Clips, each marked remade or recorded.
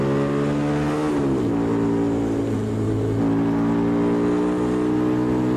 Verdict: recorded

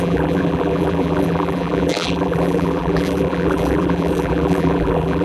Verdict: remade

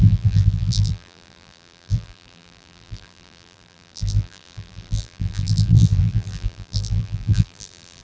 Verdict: remade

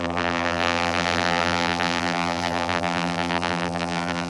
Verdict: remade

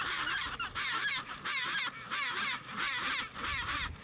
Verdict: remade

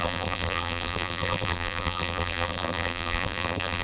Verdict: remade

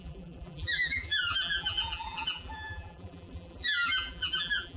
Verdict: remade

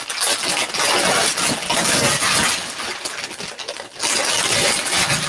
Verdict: recorded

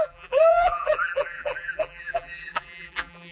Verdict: remade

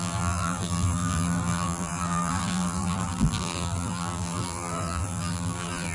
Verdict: remade